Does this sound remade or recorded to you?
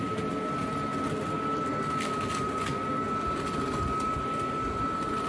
recorded